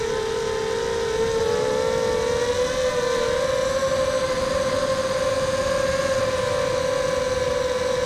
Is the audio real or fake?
real